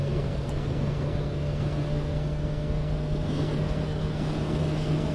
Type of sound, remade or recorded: remade